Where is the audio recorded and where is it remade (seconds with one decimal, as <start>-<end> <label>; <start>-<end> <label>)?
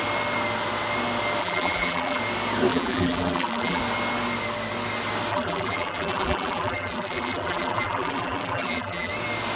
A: 0.0-1.4 recorded; 1.4-2.2 remade; 2.2-2.7 recorded; 2.7-3.8 remade; 3.8-5.3 recorded; 5.3-9.1 remade; 9.1-9.6 recorded